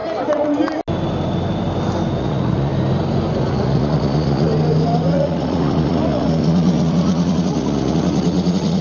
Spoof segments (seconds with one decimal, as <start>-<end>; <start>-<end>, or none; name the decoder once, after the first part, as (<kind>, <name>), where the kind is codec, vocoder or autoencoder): 2.2-2.7 (vocoder, Vocos); 3.4-4.5; 5.1-8.8